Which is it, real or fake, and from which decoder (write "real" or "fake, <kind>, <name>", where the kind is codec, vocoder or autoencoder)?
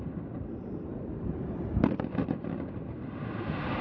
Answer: real